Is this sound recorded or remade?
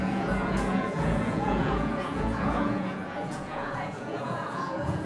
remade